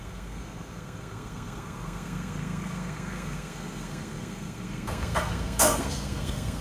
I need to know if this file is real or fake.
fake